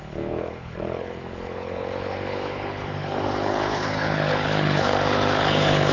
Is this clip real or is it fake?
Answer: fake